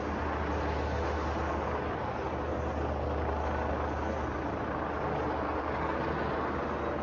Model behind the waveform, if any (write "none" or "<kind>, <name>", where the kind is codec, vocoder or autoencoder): none